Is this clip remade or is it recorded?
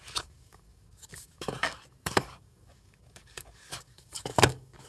remade